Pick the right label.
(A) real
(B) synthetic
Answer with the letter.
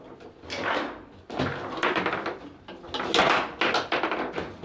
A